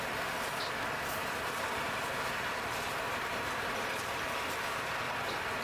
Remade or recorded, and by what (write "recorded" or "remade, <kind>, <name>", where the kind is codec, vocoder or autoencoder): recorded